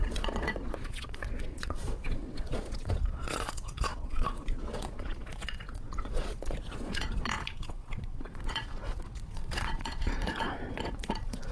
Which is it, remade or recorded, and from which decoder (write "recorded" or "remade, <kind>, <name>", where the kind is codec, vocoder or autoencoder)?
remade, vocoder, Vocos